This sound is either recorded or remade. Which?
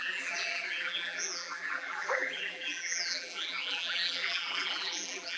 remade